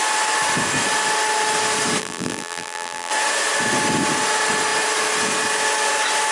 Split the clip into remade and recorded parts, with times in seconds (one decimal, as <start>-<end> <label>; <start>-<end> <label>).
0.0-2.0 recorded; 2.0-3.1 remade; 3.1-6.3 recorded